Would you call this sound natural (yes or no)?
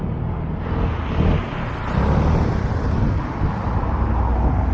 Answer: yes